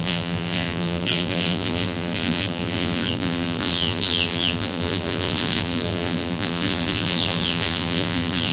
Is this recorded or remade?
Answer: remade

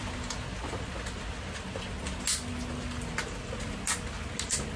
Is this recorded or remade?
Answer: recorded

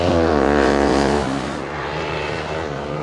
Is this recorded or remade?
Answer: remade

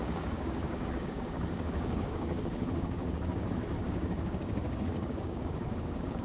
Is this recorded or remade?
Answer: remade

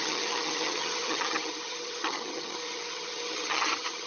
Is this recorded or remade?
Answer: remade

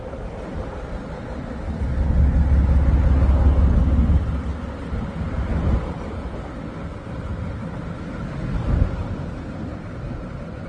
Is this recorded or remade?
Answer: recorded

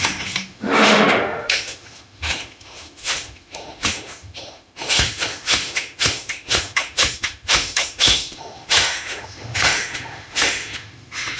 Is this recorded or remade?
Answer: remade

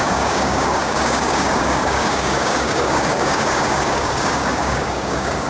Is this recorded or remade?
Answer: remade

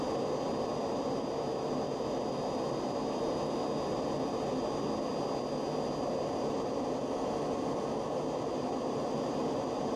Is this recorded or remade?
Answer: recorded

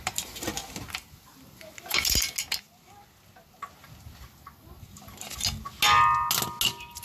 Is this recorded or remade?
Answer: recorded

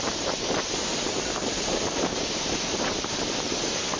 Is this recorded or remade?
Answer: remade